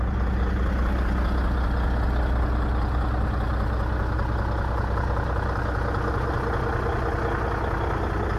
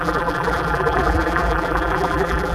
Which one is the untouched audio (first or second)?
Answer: first